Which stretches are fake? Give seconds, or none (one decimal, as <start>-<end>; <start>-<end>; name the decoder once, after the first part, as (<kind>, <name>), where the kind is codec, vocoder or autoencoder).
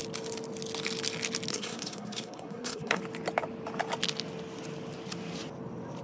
1.5-3.0 (codec, SNAC)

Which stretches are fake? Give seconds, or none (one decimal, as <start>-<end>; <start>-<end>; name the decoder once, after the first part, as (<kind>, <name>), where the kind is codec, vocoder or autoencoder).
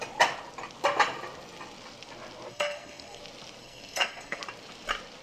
2.5-3.2 (codec, SNAC); 3.6-4.4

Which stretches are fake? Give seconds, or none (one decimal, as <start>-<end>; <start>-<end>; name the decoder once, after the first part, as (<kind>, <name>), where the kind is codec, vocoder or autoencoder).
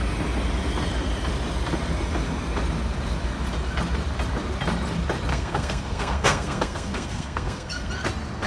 5.3-7.9 (codec, SNAC)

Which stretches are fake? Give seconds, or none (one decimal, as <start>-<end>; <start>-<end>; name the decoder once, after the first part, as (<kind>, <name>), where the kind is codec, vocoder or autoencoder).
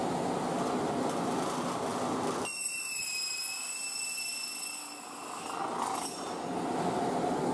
none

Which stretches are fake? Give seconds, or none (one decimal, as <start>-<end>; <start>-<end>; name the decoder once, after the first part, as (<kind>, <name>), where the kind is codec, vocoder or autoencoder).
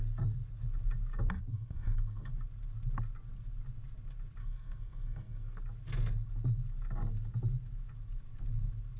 1.5-2.3 (codec, SNAC); 4.4-5.6